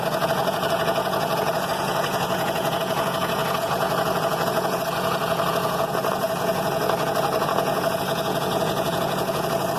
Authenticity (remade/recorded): remade